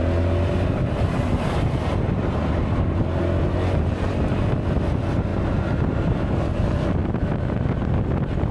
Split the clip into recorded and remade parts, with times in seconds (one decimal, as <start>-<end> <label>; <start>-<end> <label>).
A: 0.0-8.5 recorded